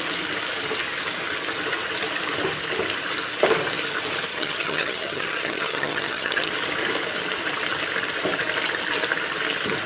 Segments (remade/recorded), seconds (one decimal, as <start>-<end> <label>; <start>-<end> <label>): 0.0-4.3 recorded; 4.3-6.5 remade; 6.5-9.9 recorded